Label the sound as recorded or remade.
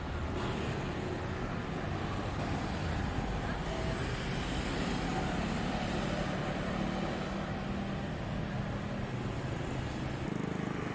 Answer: recorded